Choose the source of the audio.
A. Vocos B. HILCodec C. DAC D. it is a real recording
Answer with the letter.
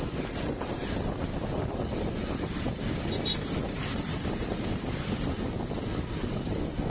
D